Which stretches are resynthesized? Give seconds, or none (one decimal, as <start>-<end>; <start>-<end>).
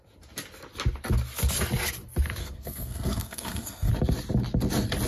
2.4-3.9